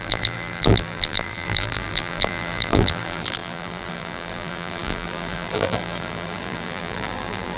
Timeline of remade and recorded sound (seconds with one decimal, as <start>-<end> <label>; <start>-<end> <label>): 0.0-7.6 remade